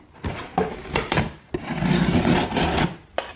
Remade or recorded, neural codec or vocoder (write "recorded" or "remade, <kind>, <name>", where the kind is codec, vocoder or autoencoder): recorded